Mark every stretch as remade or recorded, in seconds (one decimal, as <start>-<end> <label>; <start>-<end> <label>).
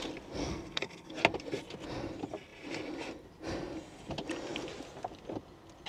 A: 0.0-0.4 recorded; 0.4-1.1 remade; 1.1-5.9 recorded